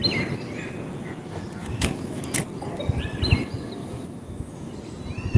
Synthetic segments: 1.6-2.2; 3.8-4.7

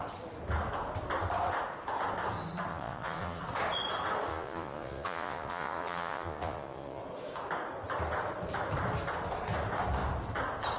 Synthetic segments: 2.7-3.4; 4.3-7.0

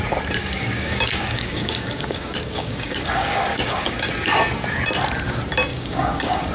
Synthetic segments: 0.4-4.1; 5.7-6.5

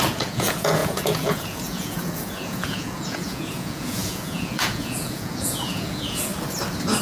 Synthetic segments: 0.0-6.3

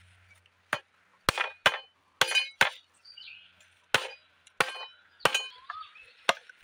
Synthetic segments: none